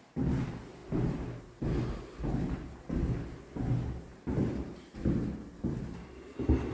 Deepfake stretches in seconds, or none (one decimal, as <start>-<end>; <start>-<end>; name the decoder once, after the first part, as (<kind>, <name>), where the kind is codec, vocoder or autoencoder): none